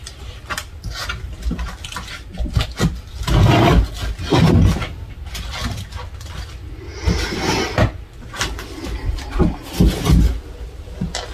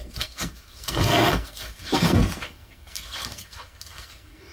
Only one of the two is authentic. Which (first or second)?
first